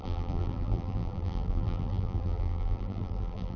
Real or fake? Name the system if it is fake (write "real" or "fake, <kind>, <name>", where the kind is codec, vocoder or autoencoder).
fake, vocoder, BigVGAN v2